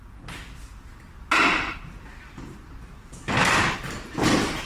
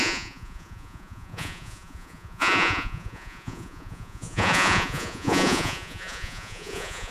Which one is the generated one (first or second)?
second